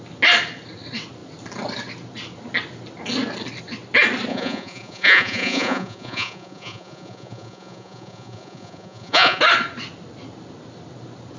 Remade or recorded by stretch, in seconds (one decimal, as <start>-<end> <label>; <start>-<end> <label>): 0.0-4.3 recorded; 4.3-9.4 remade; 9.4-11.4 recorded